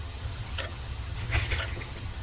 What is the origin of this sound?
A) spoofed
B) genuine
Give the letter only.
A